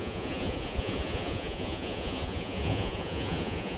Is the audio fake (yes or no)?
yes